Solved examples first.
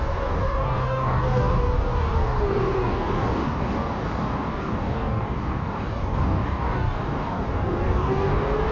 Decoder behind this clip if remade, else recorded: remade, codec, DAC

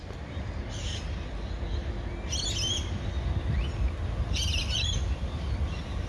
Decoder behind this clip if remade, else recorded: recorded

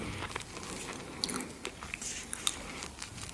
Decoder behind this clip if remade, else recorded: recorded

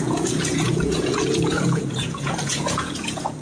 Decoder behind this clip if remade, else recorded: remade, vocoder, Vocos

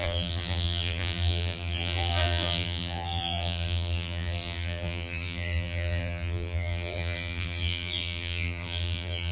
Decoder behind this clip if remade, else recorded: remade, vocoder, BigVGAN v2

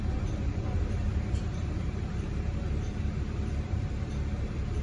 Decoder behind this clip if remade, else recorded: remade, vocoder, BigVGAN v2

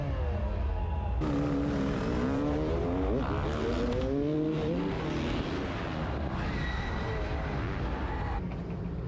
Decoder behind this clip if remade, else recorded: recorded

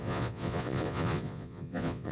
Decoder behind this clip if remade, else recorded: remade, vocoder, Vocos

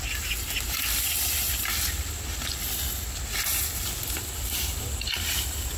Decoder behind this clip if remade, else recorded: recorded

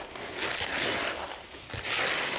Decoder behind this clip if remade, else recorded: recorded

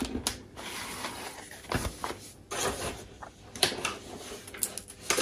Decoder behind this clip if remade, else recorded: recorded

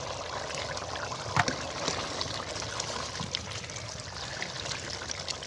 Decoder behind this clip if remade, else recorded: recorded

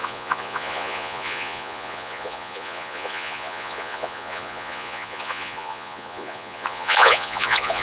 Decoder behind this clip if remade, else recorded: remade, vocoder, Vocos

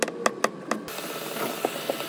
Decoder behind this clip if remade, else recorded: recorded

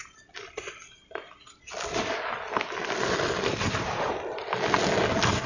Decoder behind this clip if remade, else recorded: recorded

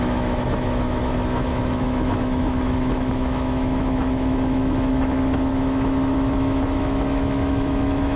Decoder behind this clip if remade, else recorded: remade, autoencoder, DAC-VAE